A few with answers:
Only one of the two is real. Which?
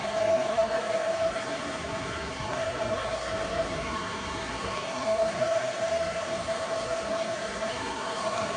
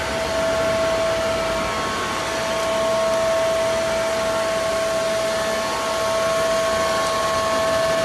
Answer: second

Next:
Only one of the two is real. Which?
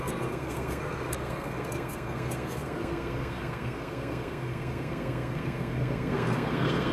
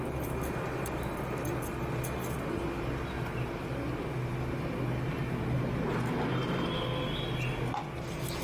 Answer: second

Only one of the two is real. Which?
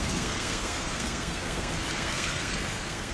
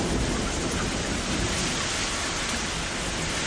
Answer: second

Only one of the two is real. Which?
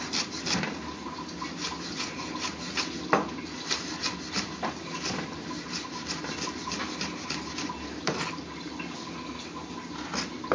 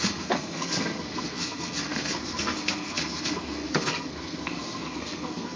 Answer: first